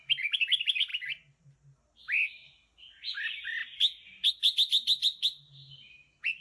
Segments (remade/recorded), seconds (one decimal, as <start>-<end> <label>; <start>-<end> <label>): 0.0-6.4 recorded